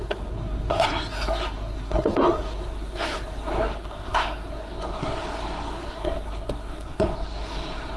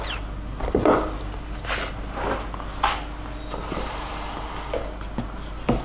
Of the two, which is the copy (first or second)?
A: first